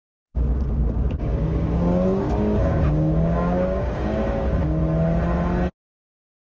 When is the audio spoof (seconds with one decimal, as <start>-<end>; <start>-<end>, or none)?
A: 0.0-4.8